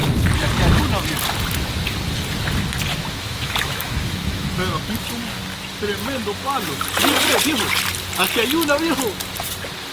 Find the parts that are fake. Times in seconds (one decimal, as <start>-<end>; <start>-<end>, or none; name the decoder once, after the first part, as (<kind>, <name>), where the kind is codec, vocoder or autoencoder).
2.9-4.8 (autoencoder, DAC-VAE)